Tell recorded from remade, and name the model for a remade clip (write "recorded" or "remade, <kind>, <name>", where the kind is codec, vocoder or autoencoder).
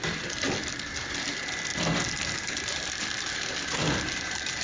recorded